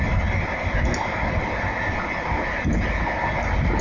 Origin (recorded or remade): recorded